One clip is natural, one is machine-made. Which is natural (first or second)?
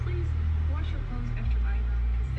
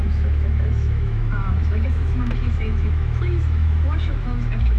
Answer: first